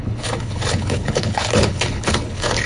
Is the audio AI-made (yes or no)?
yes